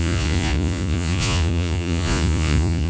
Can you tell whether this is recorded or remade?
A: remade